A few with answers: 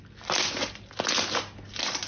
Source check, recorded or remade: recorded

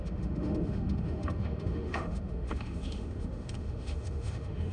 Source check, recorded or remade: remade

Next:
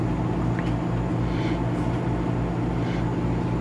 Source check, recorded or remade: recorded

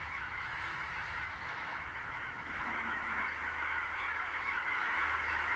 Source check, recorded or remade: remade